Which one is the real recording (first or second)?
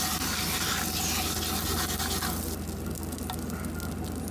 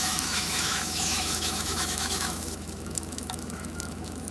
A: first